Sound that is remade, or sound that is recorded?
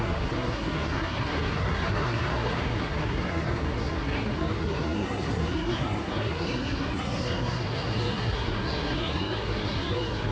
remade